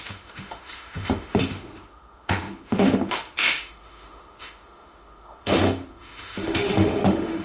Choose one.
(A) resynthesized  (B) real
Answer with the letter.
A